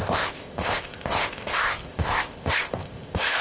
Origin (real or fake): fake